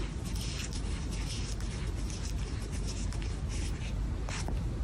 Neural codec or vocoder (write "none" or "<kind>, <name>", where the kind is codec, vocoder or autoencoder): none